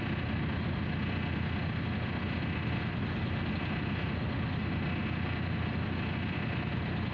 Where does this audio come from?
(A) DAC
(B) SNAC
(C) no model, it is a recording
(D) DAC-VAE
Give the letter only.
C